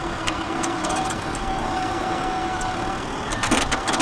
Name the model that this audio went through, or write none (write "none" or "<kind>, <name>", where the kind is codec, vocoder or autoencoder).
codec, SNAC